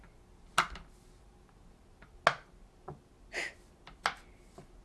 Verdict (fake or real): real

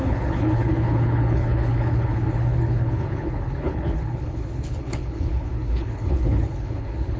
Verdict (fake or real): fake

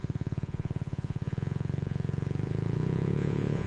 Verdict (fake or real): fake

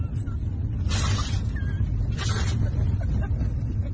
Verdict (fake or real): real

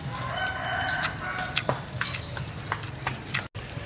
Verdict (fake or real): real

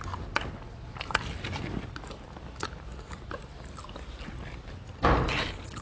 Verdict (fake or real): real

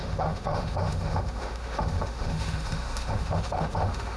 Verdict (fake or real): fake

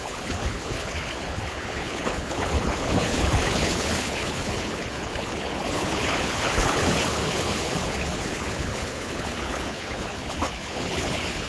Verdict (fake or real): fake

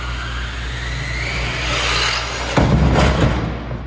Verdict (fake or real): real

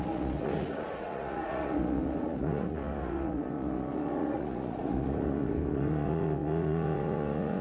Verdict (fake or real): fake